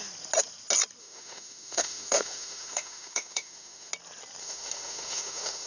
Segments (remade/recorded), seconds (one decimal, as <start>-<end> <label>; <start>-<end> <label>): 0.0-1.0 recorded; 1.0-3.9 remade; 3.9-4.4 recorded; 4.4-5.7 remade